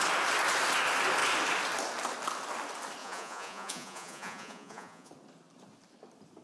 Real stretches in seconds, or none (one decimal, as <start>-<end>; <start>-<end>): 0.0-3.0; 5.1-6.4

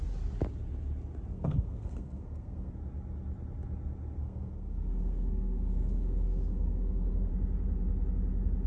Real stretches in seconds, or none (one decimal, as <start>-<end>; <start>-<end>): 0.0-1.3; 2.7-4.2; 7.3-8.7

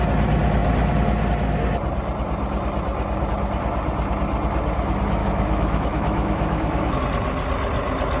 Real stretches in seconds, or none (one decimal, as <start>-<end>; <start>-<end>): 0.0-5.2; 7.0-8.2

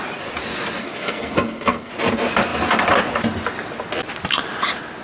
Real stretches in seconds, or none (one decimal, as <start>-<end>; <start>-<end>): 0.0-0.8; 1.9-5.0